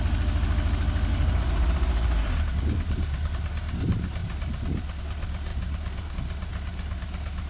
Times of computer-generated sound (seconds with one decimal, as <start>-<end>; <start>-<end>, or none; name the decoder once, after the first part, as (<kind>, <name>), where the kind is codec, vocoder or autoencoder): 1.1-3.3 (vocoder, BigVGAN v2); 5.5-6.1; 6.5-7.0